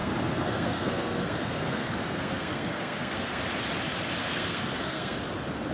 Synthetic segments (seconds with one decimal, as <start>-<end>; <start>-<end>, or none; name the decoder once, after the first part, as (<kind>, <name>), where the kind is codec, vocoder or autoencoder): 0.0-3.4 (codec, SNAC); 4.2-5.2